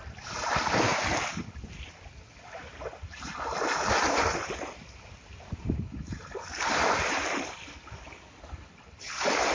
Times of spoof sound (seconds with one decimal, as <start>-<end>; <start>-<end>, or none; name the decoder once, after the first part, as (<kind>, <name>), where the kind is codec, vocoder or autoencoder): none